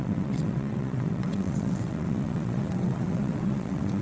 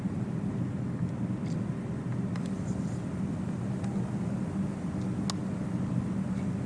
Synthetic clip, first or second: first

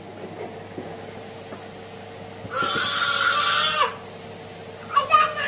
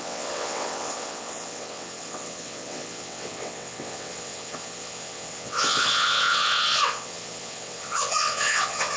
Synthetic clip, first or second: second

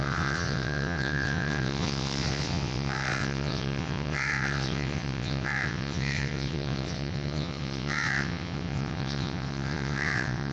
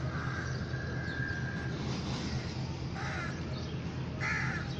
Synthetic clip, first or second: first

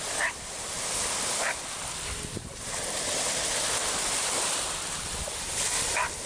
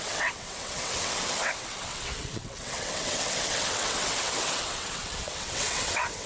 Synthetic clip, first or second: second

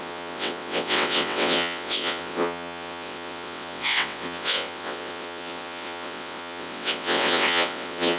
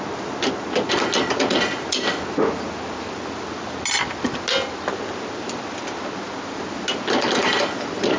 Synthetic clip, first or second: first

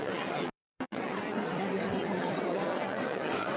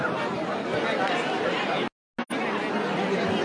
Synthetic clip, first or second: first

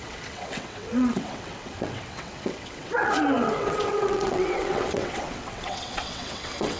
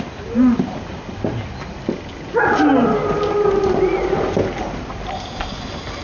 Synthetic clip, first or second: first